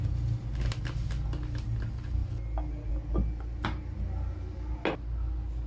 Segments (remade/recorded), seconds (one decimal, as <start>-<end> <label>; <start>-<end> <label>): 0.0-5.7 recorded